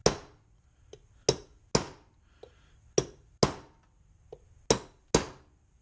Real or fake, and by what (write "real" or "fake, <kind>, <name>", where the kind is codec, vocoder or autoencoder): real